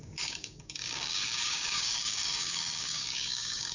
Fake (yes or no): yes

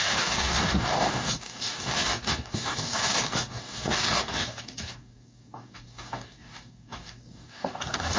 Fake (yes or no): yes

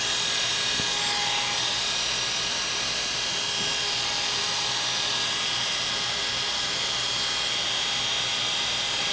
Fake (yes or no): no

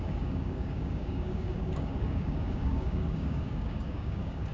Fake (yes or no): yes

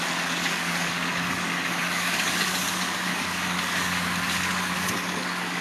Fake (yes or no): yes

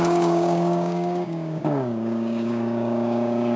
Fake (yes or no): yes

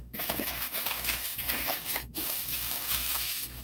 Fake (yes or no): yes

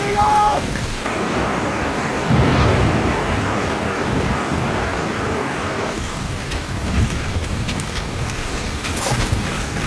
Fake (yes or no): yes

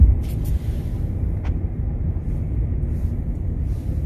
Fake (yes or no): no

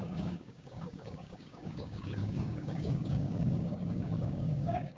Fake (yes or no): yes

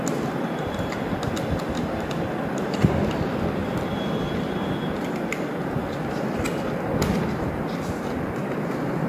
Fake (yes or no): no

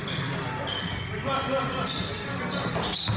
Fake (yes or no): no